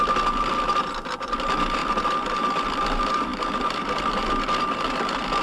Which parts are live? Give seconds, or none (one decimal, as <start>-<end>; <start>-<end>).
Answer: 0.0-5.4